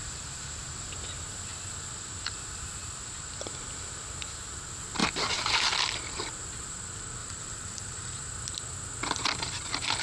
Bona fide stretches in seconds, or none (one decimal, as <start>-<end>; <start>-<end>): 0.7-5.0; 5.7-7.2; 8.3-10.0